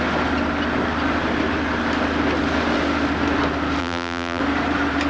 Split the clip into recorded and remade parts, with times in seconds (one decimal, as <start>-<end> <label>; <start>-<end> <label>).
0.0-3.8 recorded; 3.8-4.4 remade; 4.4-5.1 recorded